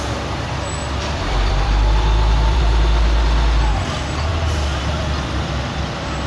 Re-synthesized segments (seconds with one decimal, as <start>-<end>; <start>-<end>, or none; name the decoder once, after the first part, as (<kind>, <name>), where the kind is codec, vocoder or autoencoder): 0.8-2.6 (vocoder, BigVGAN v2)